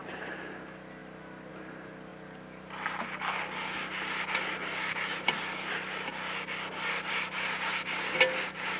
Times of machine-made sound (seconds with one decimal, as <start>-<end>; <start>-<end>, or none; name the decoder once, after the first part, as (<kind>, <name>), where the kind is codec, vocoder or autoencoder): none